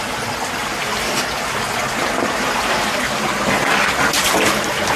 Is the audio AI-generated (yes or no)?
no